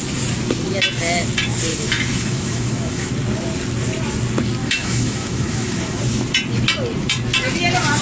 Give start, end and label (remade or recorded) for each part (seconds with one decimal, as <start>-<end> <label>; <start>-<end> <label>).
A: 0.0-1.7 recorded; 1.7-3.1 remade; 3.1-4.6 recorded; 4.6-6.0 remade; 6.0-8.0 recorded

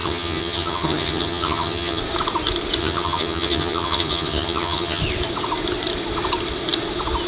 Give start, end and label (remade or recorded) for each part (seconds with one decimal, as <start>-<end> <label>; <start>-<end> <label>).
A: 0.0-2.0 remade; 2.0-2.8 recorded; 2.8-5.0 remade; 5.0-7.3 recorded

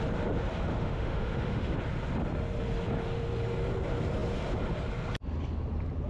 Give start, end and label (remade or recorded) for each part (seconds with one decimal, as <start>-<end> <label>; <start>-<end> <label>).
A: 0.0-0.7 recorded; 0.7-1.7 remade; 1.7-6.1 recorded

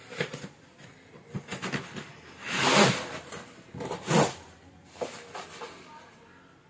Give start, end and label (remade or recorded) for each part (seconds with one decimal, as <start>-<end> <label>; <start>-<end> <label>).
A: 0.0-6.7 recorded

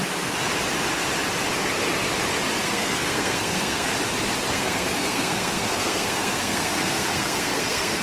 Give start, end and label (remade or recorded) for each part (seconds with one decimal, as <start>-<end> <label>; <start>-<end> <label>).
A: 0.0-2.6 recorded; 2.6-3.9 remade; 3.9-4.5 recorded; 4.5-8.0 remade

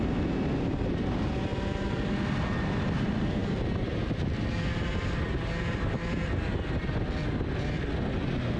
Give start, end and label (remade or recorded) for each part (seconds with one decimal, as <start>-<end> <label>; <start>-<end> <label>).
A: 0.0-8.6 recorded